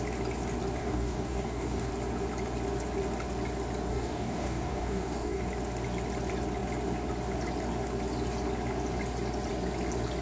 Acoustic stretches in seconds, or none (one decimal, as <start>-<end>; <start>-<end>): 0.0-0.8; 1.9-3.9; 5.4-10.2